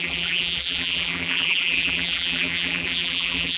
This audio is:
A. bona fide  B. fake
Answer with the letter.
B